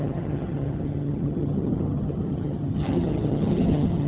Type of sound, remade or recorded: remade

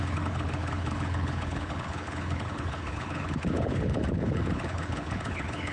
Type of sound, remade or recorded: remade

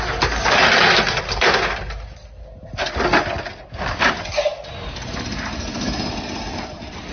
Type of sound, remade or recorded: recorded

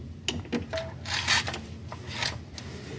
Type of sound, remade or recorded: recorded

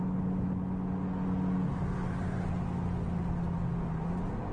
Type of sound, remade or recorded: recorded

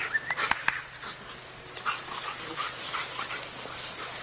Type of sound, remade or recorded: recorded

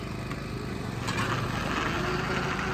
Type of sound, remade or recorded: recorded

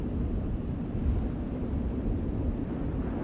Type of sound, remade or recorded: recorded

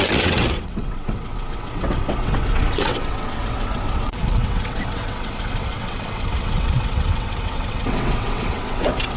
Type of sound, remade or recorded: remade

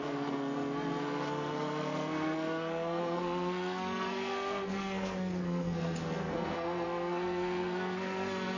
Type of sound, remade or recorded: remade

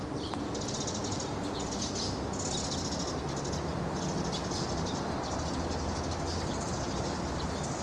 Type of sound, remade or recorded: recorded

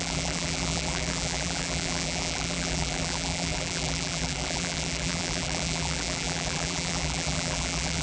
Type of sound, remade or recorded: remade